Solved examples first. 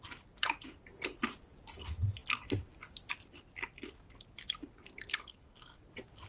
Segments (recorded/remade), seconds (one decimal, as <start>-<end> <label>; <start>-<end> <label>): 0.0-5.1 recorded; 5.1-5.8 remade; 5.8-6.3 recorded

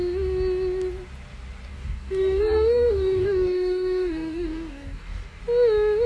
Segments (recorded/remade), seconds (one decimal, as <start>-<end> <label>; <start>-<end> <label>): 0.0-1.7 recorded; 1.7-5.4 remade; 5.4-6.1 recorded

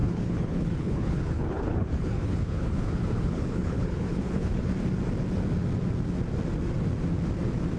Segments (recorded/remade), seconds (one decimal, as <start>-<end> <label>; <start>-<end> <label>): 0.0-4.7 remade; 4.7-7.8 recorded

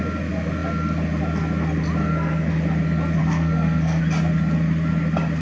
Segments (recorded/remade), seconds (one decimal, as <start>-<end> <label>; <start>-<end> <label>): 0.0-2.0 recorded; 2.0-2.5 remade; 2.5-3.2 recorded; 3.2-4.0 remade; 4.0-5.4 recorded